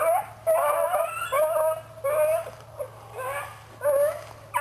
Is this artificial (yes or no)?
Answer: no